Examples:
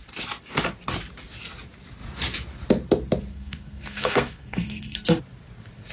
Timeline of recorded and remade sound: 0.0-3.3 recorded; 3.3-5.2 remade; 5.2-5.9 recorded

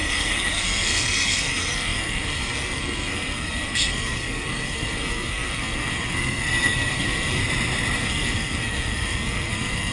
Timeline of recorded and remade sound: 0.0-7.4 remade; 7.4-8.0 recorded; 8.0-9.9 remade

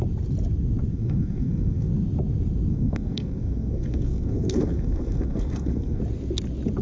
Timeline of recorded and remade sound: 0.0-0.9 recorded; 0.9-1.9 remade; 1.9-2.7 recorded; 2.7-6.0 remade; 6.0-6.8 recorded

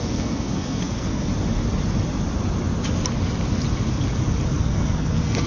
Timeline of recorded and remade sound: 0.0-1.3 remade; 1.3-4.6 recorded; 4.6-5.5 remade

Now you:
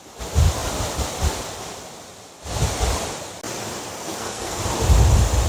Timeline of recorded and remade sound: 0.0-3.9 recorded; 3.9-4.6 remade; 4.6-5.5 recorded

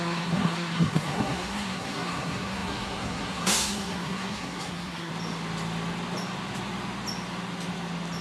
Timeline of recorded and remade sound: 0.0-5.1 remade; 5.1-8.2 recorded